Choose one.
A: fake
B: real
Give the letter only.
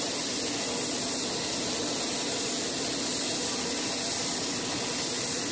B